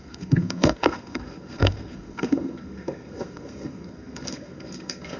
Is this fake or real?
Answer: fake